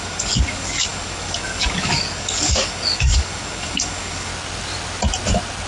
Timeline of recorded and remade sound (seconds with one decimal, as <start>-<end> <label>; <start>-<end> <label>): 0.0-4.3 remade; 4.3-5.7 recorded